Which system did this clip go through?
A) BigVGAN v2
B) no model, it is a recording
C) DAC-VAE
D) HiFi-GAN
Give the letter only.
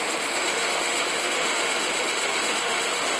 C